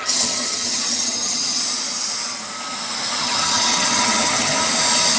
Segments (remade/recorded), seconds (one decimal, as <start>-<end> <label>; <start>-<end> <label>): 0.0-1.6 remade; 1.6-3.2 recorded; 3.2-4.6 remade; 4.6-5.2 recorded